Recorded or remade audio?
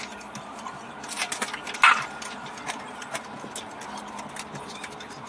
recorded